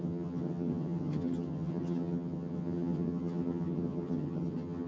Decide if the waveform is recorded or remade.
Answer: remade